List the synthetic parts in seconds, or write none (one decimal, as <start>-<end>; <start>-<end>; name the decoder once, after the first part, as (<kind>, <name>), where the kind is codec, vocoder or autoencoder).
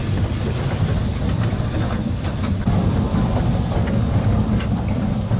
none